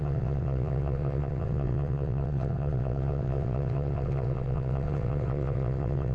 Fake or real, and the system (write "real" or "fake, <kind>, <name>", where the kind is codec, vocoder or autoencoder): fake, vocoder, WaveNeXt